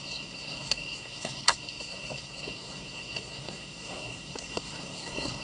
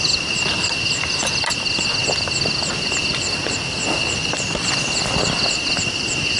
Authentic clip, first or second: second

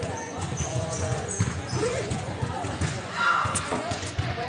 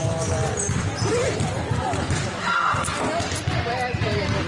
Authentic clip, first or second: second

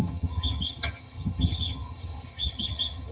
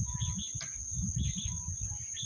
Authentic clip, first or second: second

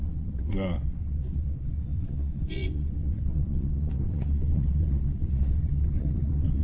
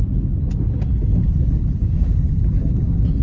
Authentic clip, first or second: second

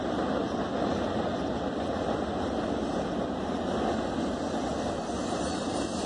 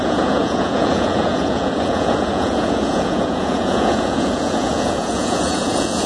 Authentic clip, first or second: first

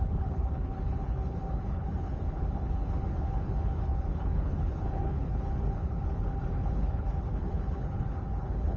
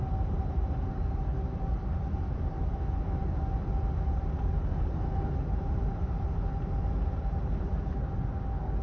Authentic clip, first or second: second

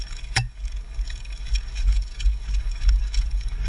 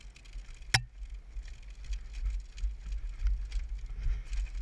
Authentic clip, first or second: second